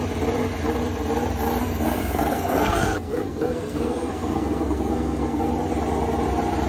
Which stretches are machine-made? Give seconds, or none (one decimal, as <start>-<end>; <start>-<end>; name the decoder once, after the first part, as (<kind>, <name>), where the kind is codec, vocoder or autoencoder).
1.6-5.5 (codec, SNAC)